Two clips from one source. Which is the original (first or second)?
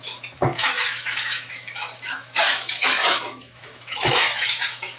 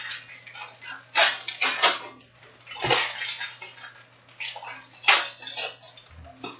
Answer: second